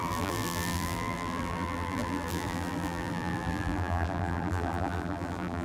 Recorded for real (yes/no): no